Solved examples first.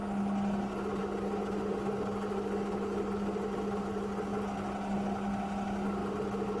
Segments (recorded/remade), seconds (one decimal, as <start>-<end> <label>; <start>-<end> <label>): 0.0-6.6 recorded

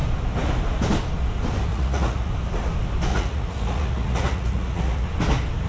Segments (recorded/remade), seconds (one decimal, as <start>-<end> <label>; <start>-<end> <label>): 0.0-1.7 recorded; 1.7-2.3 remade; 2.3-3.1 recorded; 3.1-5.1 remade; 5.1-5.7 recorded

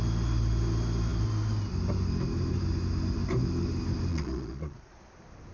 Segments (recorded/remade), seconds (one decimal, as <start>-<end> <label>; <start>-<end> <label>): 0.0-4.1 recorded; 4.1-4.9 remade; 4.9-5.5 recorded

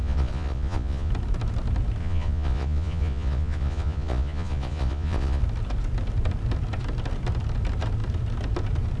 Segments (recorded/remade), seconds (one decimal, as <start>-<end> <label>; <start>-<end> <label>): 0.0-1.1 remade; 1.1-2.0 recorded; 2.0-5.4 remade; 5.4-9.0 recorded

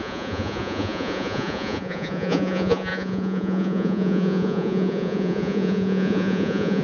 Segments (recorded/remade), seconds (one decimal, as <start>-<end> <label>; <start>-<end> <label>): 0.0-6.8 remade

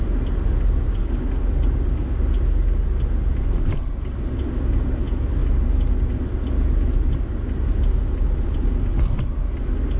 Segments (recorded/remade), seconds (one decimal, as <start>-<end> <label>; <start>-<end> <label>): 0.0-10.0 recorded

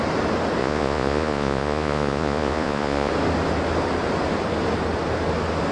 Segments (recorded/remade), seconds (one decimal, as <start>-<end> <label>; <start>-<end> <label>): 0.0-0.6 recorded; 0.6-3.1 remade; 3.1-5.7 recorded

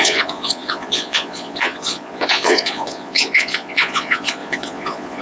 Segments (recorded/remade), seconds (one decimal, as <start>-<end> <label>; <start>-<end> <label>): 0.0-5.2 remade